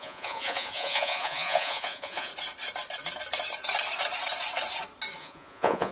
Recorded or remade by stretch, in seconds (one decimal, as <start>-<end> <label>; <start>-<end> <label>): 0.0-2.3 remade; 2.3-5.2 recorded; 5.2-5.9 remade